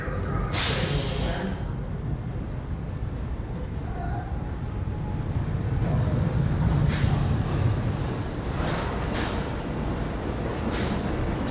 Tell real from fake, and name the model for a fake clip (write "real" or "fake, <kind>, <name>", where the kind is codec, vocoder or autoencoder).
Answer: real